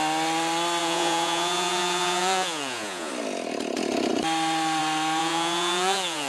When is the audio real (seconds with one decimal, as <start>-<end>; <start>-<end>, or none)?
0.0-0.8; 3.1-5.2